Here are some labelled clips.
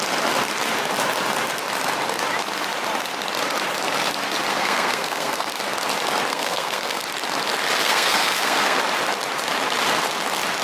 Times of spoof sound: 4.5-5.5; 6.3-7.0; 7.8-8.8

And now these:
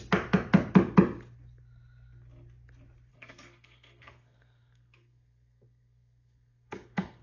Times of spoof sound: 3.1-7.2

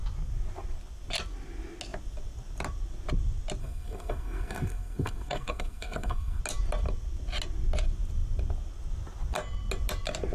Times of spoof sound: 3.6-6.4